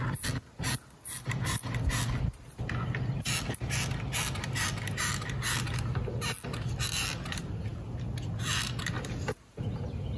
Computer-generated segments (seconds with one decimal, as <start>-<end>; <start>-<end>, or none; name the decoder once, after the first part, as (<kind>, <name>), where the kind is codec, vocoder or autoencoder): none